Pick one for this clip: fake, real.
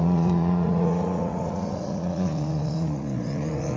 fake